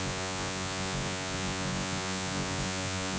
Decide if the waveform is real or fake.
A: fake